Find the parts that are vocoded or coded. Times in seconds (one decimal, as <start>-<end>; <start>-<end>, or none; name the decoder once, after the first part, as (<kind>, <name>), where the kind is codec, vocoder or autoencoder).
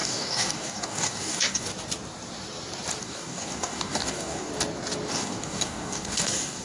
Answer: 0.0-1.7 (codec, DAC); 3.0-4.5; 5.1-6.6